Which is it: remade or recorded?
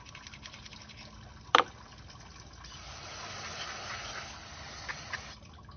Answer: recorded